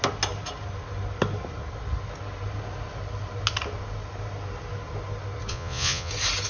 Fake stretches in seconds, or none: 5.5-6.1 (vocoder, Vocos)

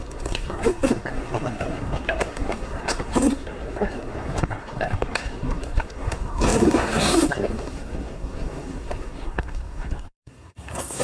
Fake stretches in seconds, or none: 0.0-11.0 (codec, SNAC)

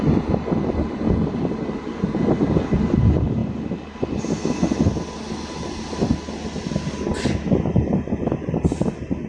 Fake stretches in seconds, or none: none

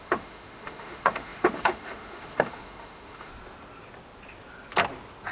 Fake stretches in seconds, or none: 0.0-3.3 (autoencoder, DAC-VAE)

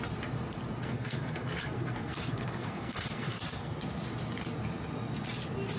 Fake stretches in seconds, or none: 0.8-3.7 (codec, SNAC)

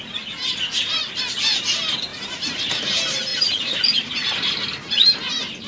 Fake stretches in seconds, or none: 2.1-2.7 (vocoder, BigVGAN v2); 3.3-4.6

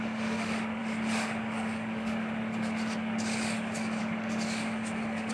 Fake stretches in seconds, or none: 0.0-5.3 (codec, DAC)

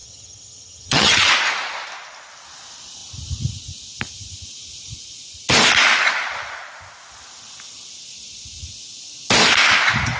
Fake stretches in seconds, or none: 0.0-1.3 (vocoder, HiFi-GAN)